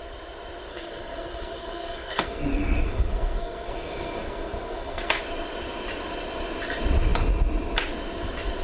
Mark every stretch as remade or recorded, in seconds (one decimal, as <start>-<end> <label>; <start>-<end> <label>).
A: 0.0-0.7 recorded; 0.7-5.2 remade; 5.2-8.6 recorded